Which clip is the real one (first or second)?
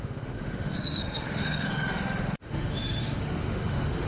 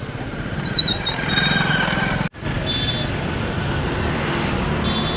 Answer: second